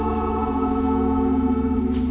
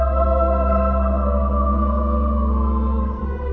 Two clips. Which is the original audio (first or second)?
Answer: first